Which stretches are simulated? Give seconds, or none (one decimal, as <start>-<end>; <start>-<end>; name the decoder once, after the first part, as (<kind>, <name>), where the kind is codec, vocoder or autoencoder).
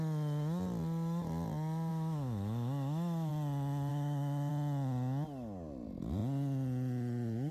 1.9-3.3 (autoencoder, DAC-VAE); 3.9-4.5